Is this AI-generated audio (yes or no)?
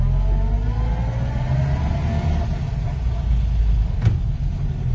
no